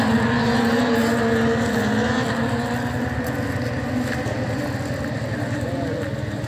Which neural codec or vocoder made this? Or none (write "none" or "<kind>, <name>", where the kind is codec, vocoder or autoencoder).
none